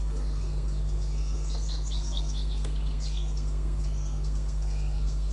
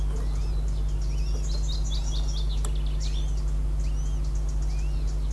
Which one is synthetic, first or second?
first